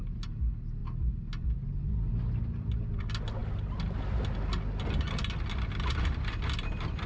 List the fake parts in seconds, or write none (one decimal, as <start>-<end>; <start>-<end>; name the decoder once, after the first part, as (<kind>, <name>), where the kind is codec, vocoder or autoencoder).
none